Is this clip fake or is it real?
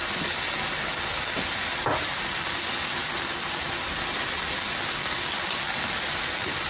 real